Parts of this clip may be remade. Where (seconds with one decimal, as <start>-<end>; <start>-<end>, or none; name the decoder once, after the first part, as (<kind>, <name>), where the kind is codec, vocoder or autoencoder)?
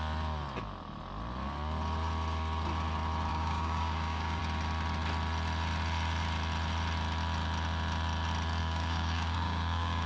3.3-4.4 (codec, DAC); 8.6-10.1